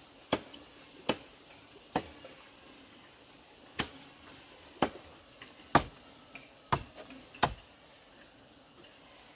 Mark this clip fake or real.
real